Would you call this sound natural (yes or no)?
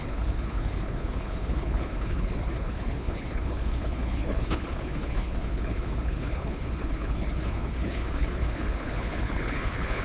no